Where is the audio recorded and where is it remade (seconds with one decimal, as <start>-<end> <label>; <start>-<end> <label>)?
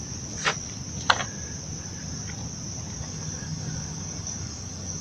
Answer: 0.0-3.0 recorded; 3.0-5.0 remade